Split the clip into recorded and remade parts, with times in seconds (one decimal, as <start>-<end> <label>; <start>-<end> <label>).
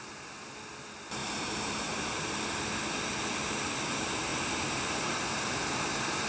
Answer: 0.0-1.2 recorded; 1.2-2.4 remade; 2.4-4.3 recorded; 4.3-5.1 remade; 5.1-6.3 recorded